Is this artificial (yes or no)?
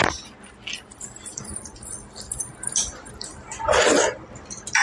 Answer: no